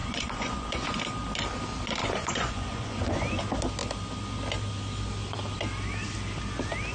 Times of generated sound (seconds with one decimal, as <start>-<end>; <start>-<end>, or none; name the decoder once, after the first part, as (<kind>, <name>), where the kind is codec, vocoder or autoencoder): 0.0-1.0 (vocoder, Vocos); 2.0-3.4